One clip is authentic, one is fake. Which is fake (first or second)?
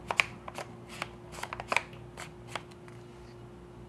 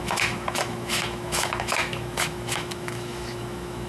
second